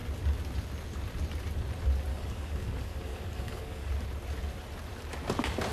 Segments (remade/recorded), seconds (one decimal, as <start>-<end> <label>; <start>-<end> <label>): 0.0-2.1 recorded; 2.1-3.9 remade; 3.9-5.7 recorded